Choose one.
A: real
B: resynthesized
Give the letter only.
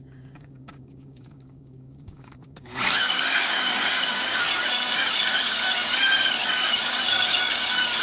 B